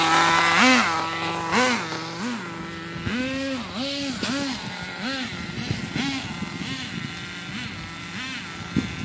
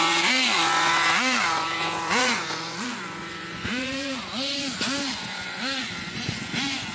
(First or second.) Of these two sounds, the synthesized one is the second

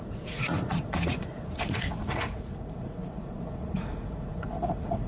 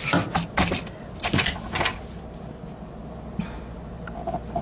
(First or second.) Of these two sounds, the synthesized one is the first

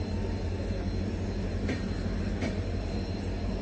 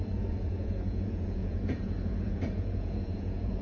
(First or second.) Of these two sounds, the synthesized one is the second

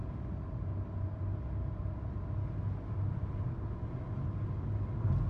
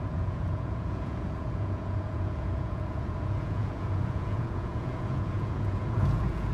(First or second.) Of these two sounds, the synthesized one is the second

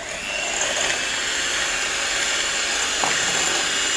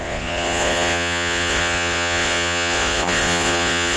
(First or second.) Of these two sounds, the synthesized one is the second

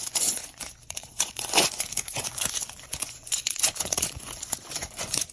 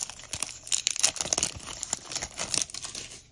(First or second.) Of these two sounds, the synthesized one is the first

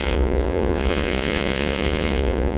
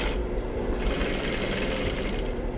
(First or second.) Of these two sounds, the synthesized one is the first